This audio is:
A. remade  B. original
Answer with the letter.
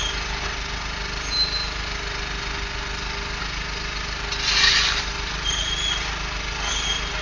B